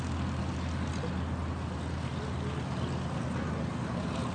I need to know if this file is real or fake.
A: real